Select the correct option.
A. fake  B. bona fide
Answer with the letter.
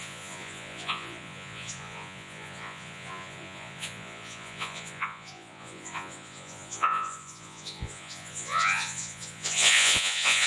A